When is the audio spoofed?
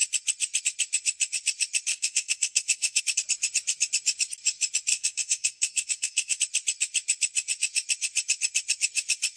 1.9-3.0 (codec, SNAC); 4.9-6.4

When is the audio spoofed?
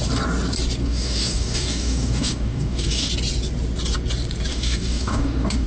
0.8-3.1 (codec, DAC); 4.5-5.7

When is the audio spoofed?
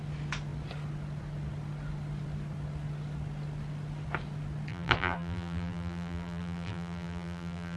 4.7-7.8 (vocoder, BigVGAN v2)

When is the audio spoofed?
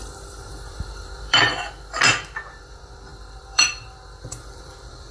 0.0-1.5 (vocoder, BigVGAN v2); 2.5-5.1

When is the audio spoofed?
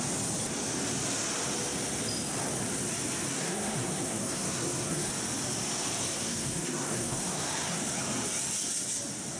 3.3-5.1 (codec, SNAC); 6.0-7.8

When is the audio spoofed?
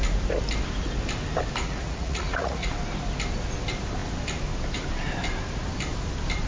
1.6-2.7 (vocoder, Vocos)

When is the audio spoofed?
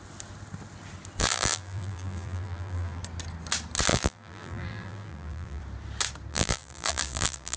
1.2-3.0 (vocoder, BigVGAN v2); 3.9-5.6; 6.3-7.6